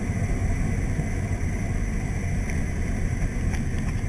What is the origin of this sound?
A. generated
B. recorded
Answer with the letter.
A